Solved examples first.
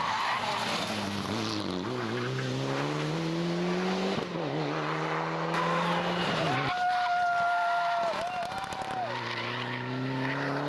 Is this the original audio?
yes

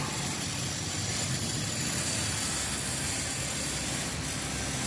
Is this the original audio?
yes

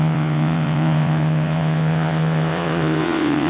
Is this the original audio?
no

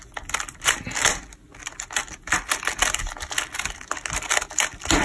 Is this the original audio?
yes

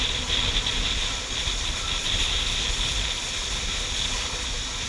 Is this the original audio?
yes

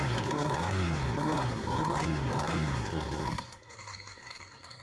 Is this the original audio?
no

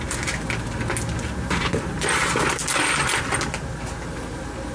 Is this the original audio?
yes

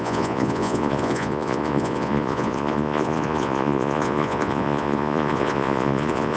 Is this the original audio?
no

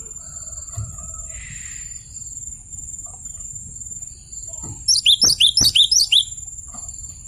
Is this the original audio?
yes